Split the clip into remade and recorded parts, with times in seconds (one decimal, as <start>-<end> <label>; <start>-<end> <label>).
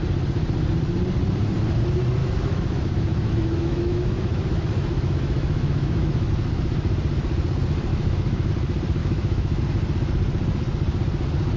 0.0-2.2 recorded; 2.2-6.3 remade; 6.3-7.9 recorded; 7.9-8.5 remade; 8.5-9.0 recorded; 9.0-9.6 remade; 9.6-11.6 recorded